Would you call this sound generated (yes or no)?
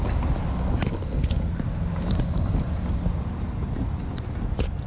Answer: no